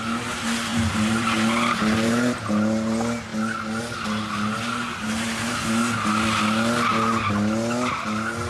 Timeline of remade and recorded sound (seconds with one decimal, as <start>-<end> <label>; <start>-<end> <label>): 0.0-0.7 recorded; 0.7-2.4 remade; 2.4-8.5 recorded